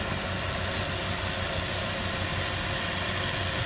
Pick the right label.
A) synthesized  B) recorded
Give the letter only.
B